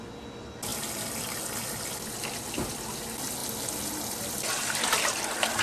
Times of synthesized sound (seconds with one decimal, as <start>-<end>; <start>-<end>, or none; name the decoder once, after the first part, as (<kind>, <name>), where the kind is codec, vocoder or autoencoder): none

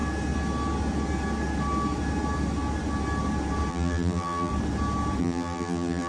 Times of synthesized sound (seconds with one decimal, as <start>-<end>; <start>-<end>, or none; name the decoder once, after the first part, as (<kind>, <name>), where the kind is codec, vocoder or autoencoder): 3.7-4.5 (vocoder, BigVGAN v2); 5.2-6.1

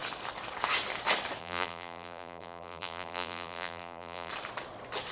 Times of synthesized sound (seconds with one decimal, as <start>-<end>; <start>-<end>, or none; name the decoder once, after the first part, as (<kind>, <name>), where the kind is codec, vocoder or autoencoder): 1.4-4.3 (vocoder, BigVGAN v2)